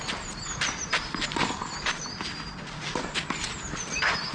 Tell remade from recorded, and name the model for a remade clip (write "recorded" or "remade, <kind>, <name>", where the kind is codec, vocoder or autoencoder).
recorded